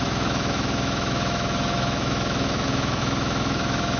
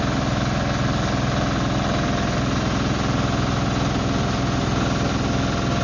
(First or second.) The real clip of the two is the second